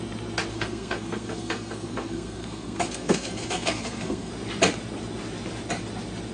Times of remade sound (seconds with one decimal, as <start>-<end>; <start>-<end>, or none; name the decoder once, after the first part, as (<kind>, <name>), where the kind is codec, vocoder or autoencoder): 0.5-4.3 (codec, SNAC)